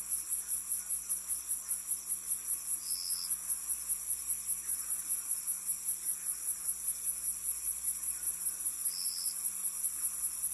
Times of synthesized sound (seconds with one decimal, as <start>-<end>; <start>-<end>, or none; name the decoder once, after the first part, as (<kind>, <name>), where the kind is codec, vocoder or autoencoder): 4.7-5.4 (vocoder, BigVGAN v2)